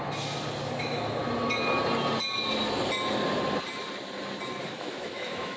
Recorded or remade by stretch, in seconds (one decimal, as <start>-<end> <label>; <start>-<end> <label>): 0.0-0.7 recorded; 0.7-1.2 remade; 1.2-4.6 recorded; 4.6-5.6 remade